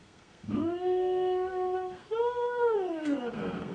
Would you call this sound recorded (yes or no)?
no